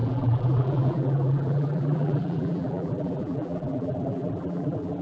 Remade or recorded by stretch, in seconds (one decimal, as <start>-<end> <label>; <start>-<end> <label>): 0.0-5.0 remade